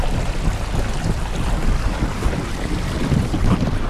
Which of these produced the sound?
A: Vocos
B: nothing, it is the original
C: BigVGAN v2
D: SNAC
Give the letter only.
B